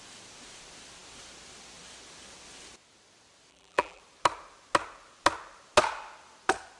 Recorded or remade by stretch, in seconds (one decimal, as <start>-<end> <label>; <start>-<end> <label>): 0.0-3.5 recorded; 3.5-4.0 remade; 4.0-6.8 recorded